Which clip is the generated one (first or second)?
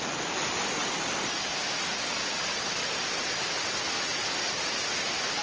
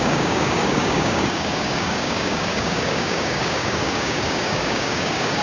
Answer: second